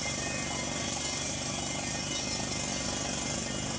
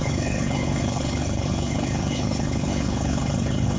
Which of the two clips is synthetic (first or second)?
second